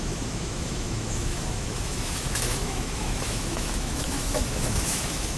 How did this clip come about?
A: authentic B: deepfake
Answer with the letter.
B